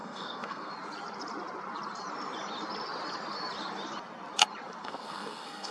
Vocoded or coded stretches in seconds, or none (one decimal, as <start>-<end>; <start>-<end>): 0.0-0.7; 4.8-5.7